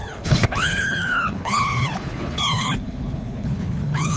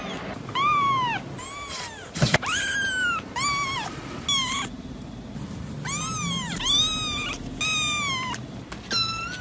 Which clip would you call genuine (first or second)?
second